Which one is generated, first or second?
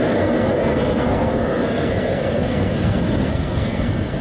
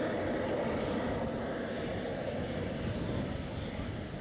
first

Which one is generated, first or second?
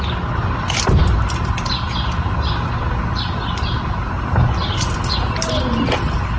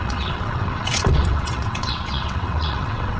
second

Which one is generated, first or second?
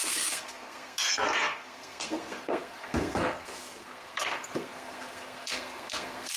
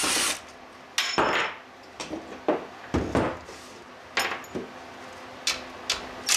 first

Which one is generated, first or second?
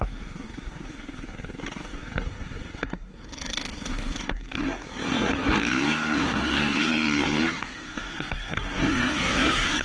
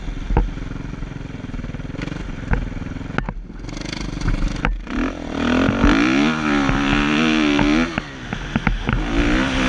first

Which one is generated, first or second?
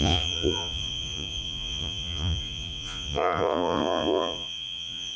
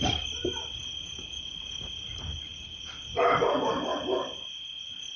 first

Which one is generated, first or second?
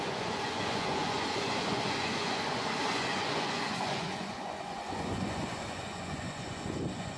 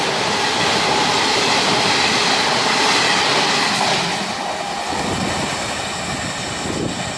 first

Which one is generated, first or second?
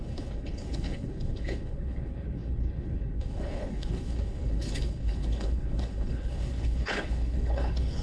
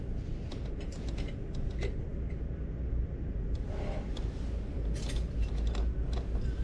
first